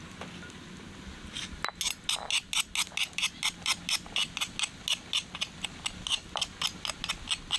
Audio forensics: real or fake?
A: real